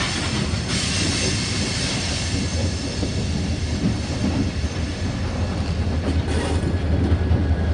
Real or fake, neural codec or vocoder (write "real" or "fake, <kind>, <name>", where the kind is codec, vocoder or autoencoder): real